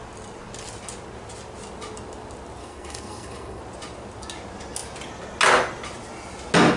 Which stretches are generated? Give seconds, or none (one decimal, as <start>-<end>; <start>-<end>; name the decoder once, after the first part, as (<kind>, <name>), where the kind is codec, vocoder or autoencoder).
2.6-3.6 (codec, SNAC)